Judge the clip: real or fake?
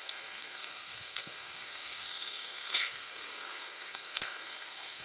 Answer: fake